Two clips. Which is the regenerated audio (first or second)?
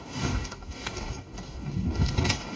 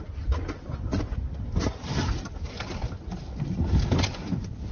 first